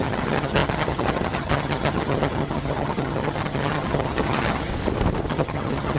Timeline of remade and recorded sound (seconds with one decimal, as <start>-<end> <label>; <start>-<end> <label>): 0.0-4.7 remade; 4.7-5.3 recorded; 5.3-6.0 remade